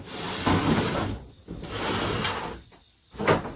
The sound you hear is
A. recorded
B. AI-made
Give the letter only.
A